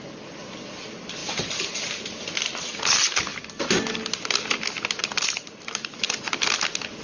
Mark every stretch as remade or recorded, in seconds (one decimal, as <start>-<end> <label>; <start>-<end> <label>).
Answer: 0.0-1.2 recorded; 1.2-2.2 remade; 2.2-5.0 recorded; 5.0-6.2 remade; 6.2-7.0 recorded